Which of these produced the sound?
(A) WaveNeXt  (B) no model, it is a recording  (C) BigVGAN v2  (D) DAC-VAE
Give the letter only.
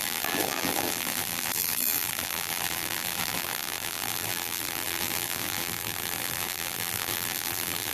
C